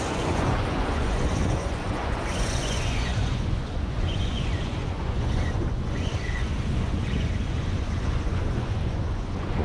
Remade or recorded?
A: remade